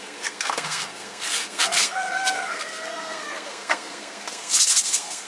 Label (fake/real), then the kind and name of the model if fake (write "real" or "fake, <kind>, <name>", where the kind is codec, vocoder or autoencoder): fake, codec, SNAC